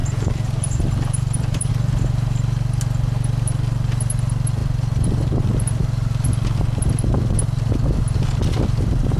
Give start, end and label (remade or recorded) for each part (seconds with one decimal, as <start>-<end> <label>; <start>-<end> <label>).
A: 0.0-1.7 remade; 1.7-9.2 recorded

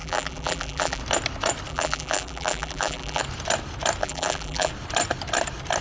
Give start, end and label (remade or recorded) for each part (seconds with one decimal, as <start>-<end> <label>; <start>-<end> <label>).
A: 0.0-1.0 remade; 1.0-1.7 recorded; 1.7-3.2 remade; 3.2-4.0 recorded; 4.0-4.7 remade; 4.7-5.8 recorded

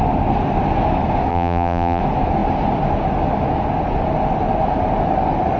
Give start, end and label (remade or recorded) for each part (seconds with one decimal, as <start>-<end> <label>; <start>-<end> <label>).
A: 0.0-1.3 recorded; 1.3-2.0 remade; 2.0-5.6 recorded

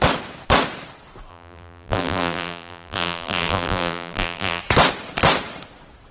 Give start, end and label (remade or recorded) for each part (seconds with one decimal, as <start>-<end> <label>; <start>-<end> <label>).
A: 0.0-1.3 recorded; 1.3-4.6 remade; 4.6-6.1 recorded

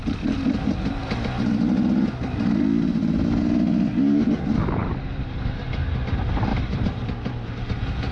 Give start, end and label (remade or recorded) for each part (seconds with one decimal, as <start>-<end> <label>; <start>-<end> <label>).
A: 0.0-4.8 recorded; 4.8-5.7 remade; 5.7-6.5 recorded; 6.5-7.1 remade; 7.1-8.1 recorded

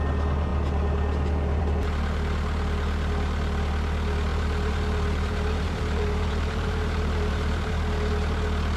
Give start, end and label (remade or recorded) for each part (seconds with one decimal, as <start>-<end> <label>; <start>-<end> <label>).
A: 0.0-4.3 recorded; 4.3-7.7 remade; 7.7-8.8 recorded

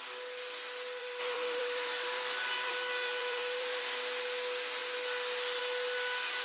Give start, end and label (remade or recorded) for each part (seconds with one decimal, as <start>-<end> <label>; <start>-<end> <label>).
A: 0.0-1.0 recorded; 1.0-3.8 remade; 3.8-6.4 recorded